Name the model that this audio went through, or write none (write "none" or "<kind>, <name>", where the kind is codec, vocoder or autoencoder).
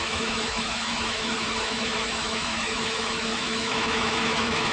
autoencoder, DAC-VAE